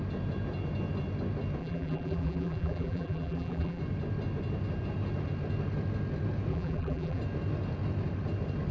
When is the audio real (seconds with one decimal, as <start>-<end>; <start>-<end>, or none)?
0.0-1.6; 3.8-6.5; 7.2-8.7